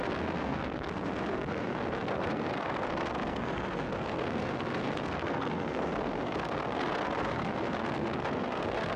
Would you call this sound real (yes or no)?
no